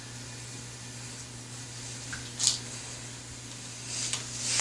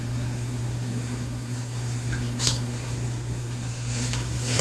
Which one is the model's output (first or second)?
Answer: second